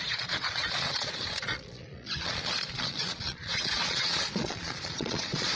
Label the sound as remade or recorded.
remade